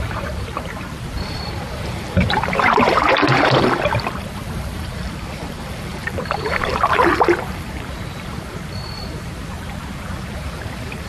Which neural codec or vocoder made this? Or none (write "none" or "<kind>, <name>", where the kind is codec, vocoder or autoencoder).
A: vocoder, BigVGAN v2